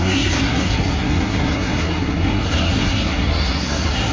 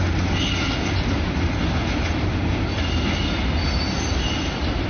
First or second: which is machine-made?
first